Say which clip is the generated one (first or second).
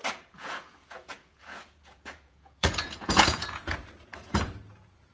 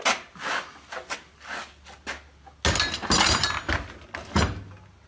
first